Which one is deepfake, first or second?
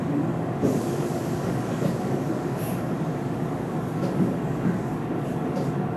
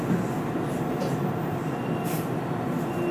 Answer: first